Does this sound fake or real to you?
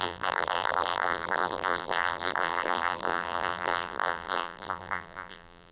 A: fake